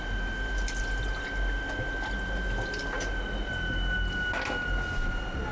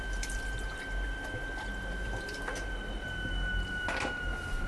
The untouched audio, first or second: first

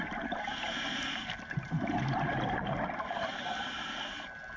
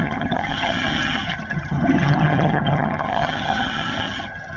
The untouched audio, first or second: first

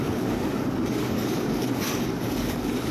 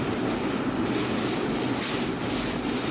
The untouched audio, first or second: second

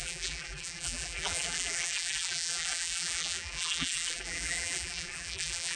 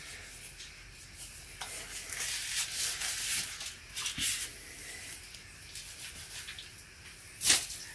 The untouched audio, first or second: second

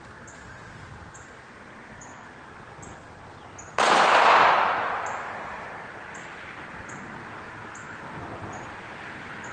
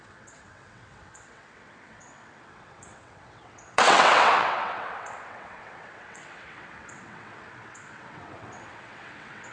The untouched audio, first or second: first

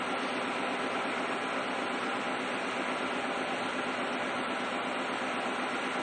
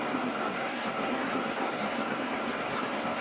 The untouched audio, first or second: first